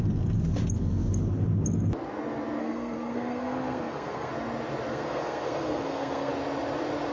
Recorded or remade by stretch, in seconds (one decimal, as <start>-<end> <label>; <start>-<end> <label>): 0.0-2.6 recorded; 2.6-4.3 remade; 4.3-4.9 recorded; 4.9-6.3 remade; 6.3-7.1 recorded